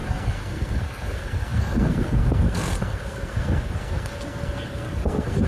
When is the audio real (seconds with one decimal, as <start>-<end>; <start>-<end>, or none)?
none